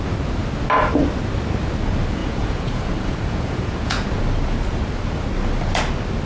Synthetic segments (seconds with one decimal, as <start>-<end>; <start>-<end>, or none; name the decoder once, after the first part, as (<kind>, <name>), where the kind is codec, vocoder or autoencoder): 2.2-4.2 (vocoder, Vocos)